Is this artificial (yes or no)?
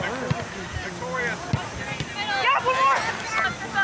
no